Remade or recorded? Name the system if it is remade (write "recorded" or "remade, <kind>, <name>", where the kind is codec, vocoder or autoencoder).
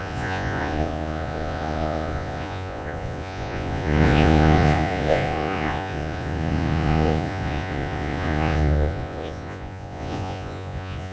remade, vocoder, Vocos